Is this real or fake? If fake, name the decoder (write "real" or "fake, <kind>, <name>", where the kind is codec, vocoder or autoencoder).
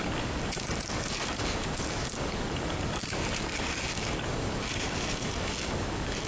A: fake, codec, DAC